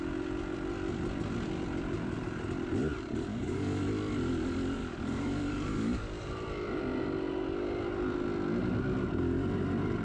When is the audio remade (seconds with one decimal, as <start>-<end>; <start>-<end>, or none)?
3.3-3.9; 4.8-6.3